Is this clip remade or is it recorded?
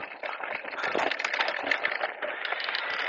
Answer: recorded